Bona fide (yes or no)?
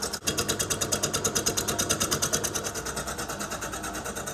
yes